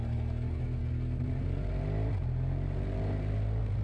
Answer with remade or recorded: recorded